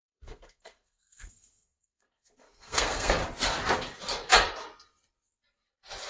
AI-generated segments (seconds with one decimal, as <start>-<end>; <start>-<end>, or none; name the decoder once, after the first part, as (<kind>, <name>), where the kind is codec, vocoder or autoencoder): 0.0-3.2 (codec, SNAC)